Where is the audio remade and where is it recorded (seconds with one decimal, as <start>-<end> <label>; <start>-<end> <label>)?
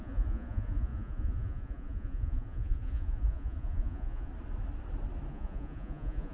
0.0-4.3 remade; 4.3-5.3 recorded; 5.3-6.3 remade